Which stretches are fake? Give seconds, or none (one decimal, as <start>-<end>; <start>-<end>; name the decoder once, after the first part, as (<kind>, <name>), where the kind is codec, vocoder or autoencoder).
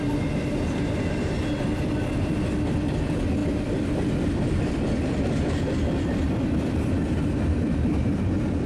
3.4-8.7 (vocoder, BigVGAN v2)